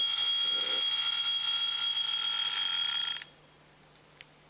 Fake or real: real